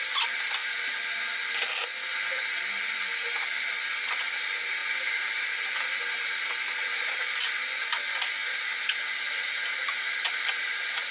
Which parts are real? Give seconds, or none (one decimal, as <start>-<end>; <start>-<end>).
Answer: 0.0-11.1